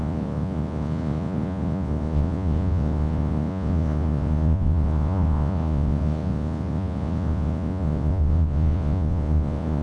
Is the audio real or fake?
fake